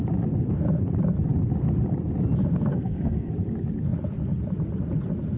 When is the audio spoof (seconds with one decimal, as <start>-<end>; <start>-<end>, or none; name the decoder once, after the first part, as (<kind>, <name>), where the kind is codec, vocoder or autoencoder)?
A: 2.7-3.3 (codec, SNAC)